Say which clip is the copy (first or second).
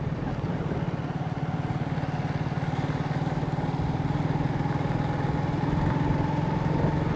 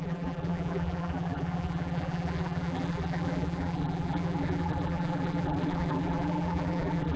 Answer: second